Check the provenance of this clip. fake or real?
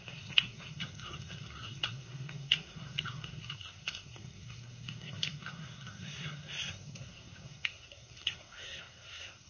fake